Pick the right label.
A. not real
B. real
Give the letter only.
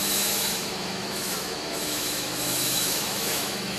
A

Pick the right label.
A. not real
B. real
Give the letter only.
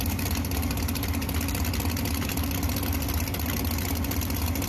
B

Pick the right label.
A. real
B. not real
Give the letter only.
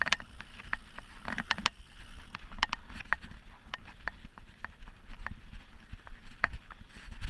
A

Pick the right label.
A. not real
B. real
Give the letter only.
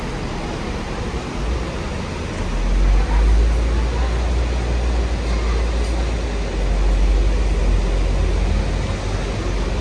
B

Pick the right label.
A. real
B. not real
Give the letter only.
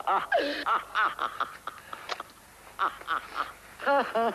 A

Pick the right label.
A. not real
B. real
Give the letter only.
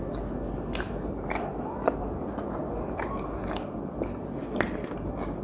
B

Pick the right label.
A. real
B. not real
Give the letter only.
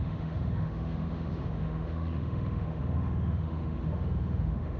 B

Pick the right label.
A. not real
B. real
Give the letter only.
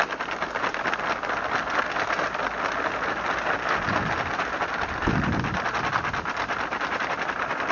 B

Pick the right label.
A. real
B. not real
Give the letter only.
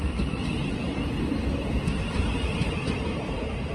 A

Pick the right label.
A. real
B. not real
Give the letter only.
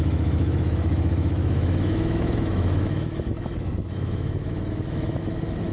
B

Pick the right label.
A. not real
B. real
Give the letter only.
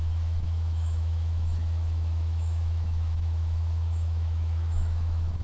A